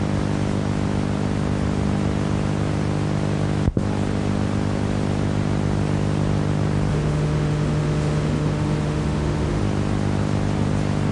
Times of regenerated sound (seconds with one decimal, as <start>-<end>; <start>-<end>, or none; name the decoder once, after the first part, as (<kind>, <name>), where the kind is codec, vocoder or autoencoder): 6.9-9.6 (autoencoder, DAC-VAE)

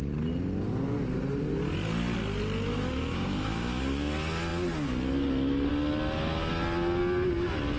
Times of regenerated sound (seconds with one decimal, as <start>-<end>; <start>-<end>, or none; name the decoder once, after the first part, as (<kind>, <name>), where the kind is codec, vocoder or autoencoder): 2.7-3.8 (autoencoder, DAC-VAE)

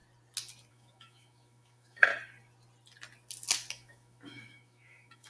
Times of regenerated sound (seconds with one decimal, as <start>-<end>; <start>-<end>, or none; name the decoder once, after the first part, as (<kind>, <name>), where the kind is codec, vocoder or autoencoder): 0.7-2.1 (autoencoder, DAC-VAE); 3.7-5.3

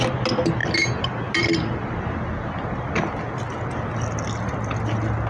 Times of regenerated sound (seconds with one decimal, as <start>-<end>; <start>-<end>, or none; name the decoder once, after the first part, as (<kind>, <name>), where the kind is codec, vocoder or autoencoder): none

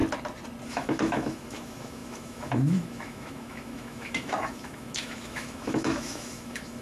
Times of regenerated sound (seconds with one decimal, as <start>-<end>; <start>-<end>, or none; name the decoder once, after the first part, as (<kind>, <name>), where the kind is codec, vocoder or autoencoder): 0.7-6.8 (autoencoder, DAC-VAE)

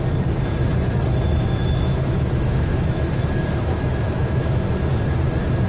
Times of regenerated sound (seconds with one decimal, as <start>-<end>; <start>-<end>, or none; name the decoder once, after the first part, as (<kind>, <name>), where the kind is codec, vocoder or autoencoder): 1.3-4.6 (autoencoder, DAC-VAE)

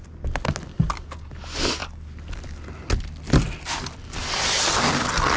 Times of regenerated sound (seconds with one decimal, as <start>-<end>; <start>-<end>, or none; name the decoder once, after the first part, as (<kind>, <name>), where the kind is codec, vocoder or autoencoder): none